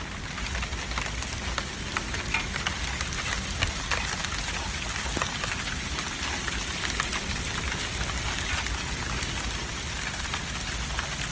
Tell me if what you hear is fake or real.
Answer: real